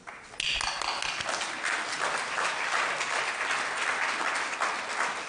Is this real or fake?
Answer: real